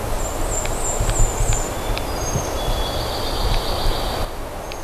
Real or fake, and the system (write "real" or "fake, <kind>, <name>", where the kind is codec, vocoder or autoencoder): real